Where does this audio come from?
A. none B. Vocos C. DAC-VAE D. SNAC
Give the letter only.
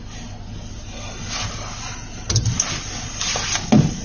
A